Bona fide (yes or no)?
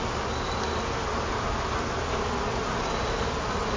yes